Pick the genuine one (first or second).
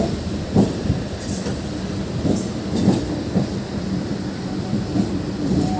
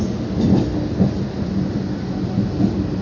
second